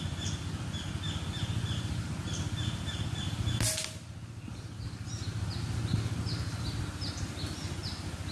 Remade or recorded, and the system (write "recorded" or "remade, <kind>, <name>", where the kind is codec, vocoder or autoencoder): recorded